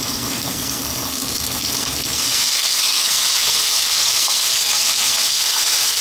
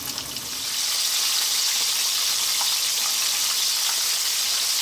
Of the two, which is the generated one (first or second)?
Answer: first